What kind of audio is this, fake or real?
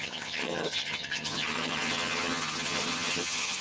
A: fake